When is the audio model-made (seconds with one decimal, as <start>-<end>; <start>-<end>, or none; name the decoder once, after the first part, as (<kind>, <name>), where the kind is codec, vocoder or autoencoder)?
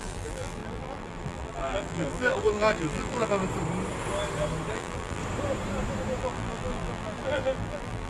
0.0-3.4 (vocoder, BigVGAN v2); 4.7-5.2; 6.2-8.1